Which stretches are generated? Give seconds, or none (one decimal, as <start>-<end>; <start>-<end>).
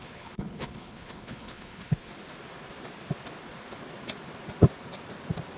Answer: 0.0-2.1